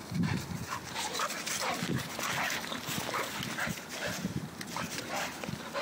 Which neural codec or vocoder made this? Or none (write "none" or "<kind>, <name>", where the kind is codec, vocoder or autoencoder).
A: none